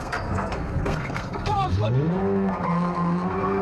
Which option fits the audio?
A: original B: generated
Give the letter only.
B